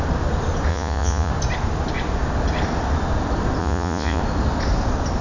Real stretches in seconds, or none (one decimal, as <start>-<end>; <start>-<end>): 0.0-0.7; 1.3-3.6; 4.2-5.2

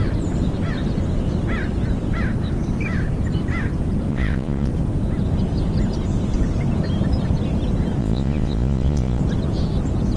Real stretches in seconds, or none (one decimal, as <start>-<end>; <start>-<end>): 0.0-4.1; 4.7-8.0; 9.2-10.2

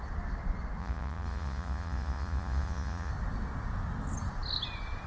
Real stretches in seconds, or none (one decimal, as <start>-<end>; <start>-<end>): 0.0-0.8; 3.1-5.1

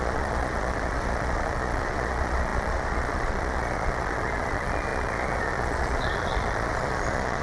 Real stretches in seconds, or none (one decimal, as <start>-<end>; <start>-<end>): none